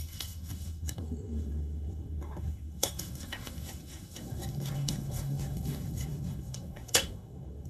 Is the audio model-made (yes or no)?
yes